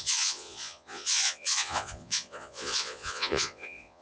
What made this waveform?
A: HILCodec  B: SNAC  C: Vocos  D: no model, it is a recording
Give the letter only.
C